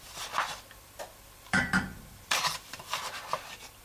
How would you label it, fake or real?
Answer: fake